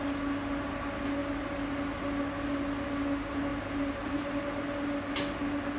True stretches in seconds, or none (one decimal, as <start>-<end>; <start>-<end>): 0.0-3.5; 4.4-5.8

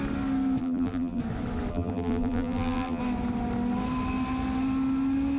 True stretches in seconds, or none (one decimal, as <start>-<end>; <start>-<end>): 0.0-0.6; 1.2-1.7; 3.0-5.4

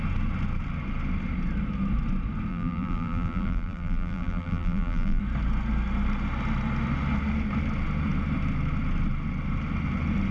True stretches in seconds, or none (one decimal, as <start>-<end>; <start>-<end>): 0.0-2.5; 5.2-10.3

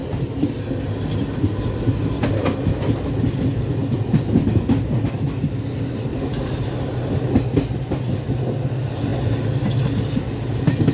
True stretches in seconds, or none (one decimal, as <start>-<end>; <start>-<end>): 0.6-6.1; 7.1-10.9

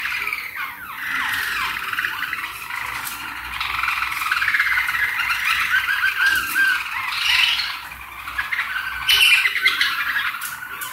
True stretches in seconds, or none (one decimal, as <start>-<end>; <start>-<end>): 0.0-9.0; 10.0-10.9

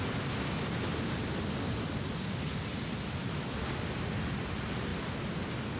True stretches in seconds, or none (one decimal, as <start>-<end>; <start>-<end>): 0.0-4.9

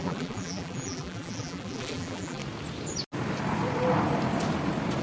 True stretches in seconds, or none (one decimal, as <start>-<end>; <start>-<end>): 2.4-5.0

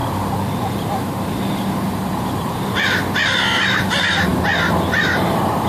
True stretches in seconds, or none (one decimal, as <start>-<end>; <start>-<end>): none